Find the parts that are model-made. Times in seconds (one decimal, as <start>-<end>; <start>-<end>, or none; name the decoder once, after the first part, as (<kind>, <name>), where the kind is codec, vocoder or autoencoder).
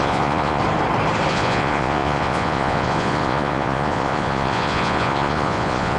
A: 0.0-0.6 (vocoder, Vocos); 1.3-6.0